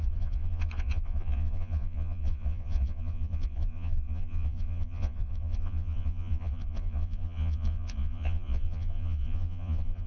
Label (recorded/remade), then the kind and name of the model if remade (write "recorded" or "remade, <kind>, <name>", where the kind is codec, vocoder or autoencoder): remade, vocoder, Vocos